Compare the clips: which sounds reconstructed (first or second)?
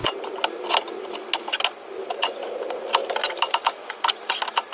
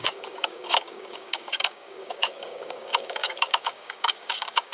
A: second